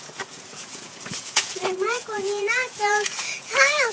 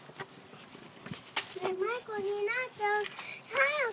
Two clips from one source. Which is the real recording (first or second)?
second